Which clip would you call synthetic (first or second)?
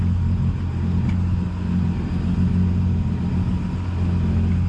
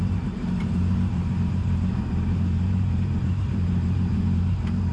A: second